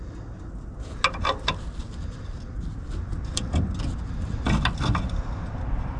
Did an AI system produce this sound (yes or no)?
no